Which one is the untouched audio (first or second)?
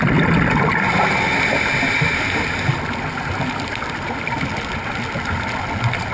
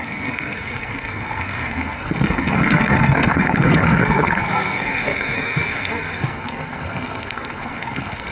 first